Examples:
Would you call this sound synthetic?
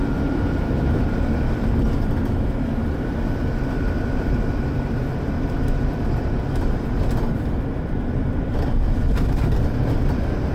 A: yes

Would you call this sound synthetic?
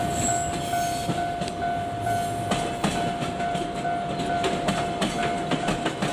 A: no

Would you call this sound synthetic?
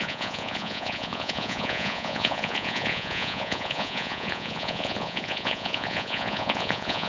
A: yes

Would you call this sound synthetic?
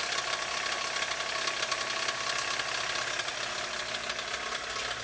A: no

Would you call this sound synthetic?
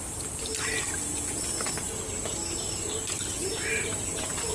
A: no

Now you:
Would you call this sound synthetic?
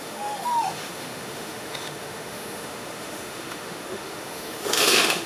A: yes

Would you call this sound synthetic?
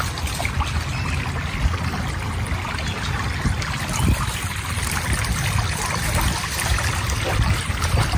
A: no